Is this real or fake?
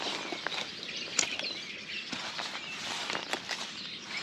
real